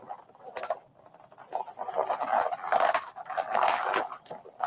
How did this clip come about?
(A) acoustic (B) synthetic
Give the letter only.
A